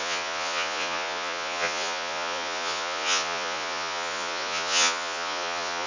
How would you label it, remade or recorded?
remade